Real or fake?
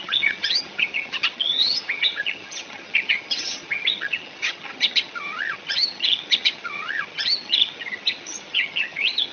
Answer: fake